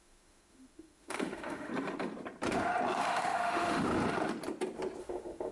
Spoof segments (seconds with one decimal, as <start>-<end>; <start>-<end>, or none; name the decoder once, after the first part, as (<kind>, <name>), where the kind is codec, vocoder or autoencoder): 0.0-1.7 (autoencoder, DAC-VAE); 3.0-3.9; 5.0-5.5